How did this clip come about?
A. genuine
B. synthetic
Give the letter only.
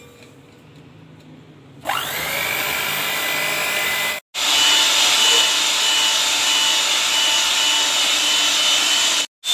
A